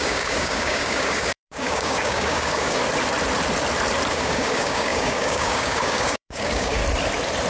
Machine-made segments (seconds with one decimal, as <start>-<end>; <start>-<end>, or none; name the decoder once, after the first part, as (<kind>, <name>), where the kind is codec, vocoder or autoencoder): 0.0-2.8 (codec, DAC); 4.1-6.8